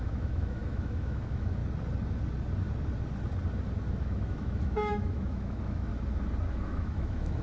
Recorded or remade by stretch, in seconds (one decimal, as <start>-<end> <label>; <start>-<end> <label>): 0.0-1.6 remade; 1.6-3.9 recorded; 3.9-5.9 remade; 5.9-6.5 recorded; 6.5-7.4 remade